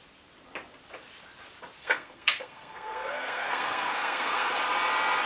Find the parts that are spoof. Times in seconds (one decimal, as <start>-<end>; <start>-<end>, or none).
1.8-4.5